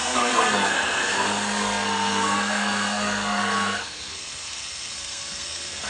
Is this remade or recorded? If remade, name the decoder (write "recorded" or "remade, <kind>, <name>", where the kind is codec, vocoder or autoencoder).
remade, codec, SNAC